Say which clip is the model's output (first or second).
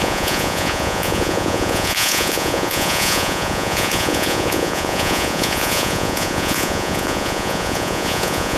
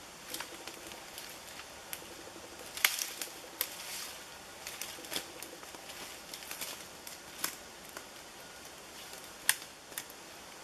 first